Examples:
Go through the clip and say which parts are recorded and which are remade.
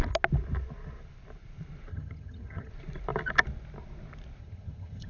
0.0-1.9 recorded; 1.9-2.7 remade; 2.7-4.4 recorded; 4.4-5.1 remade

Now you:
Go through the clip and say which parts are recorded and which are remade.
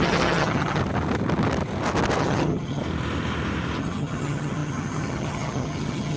0.0-0.8 remade; 0.8-2.2 recorded; 2.2-2.8 remade; 2.8-3.8 recorded; 3.8-6.2 remade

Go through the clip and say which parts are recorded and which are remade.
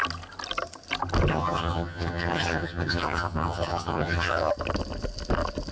0.0-1.3 recorded; 1.3-4.5 remade; 4.5-5.7 recorded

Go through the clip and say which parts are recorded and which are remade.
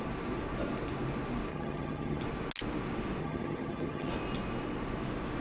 0.0-1.5 recorded; 1.5-2.2 remade; 2.2-3.2 recorded; 3.2-4.1 remade; 4.1-5.4 recorded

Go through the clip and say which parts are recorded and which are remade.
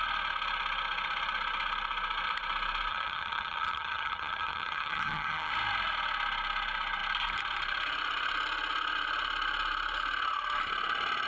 0.0-2.9 recorded; 2.9-5.5 remade; 5.5-11.3 recorded